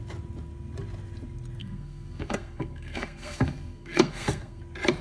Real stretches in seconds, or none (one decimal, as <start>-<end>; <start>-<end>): 0.0-1.6; 4.6-5.0